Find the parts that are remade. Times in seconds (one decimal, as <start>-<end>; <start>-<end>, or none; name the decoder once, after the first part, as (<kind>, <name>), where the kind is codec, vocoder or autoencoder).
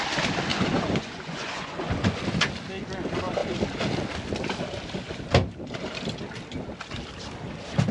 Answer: 0.5-2.2 (vocoder, Vocos)